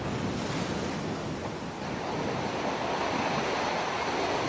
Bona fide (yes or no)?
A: yes